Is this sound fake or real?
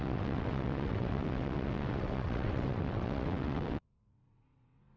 fake